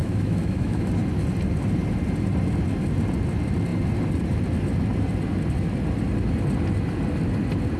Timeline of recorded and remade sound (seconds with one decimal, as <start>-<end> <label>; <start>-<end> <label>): 0.0-0.9 remade; 0.9-7.8 recorded